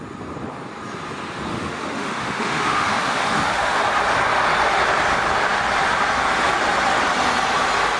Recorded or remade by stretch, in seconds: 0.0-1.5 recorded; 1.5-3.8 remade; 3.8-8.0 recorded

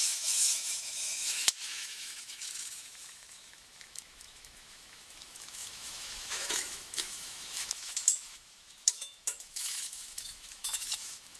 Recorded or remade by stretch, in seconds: 0.0-11.4 remade

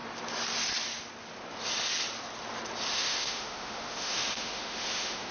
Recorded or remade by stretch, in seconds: 0.0-2.9 recorded; 2.9-5.3 remade

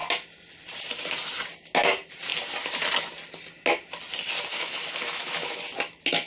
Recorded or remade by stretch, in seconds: 0.0-4.5 recorded; 4.5-5.6 remade; 5.6-6.3 recorded

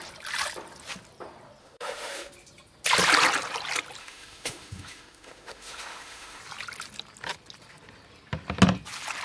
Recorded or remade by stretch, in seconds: 0.0-1.6 recorded; 1.6-2.3 remade; 2.3-4.0 recorded; 4.0-6.4 remade; 6.4-9.2 recorded

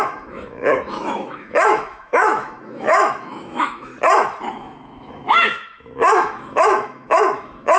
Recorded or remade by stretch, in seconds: 0.0-3.9 remade; 3.9-4.5 recorded; 4.5-7.8 remade